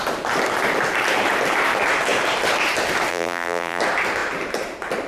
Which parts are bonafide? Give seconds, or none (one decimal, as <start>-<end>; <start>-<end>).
0.0-3.1; 3.8-5.1